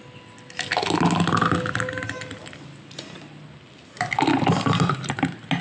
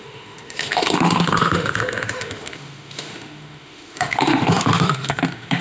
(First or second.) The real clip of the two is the first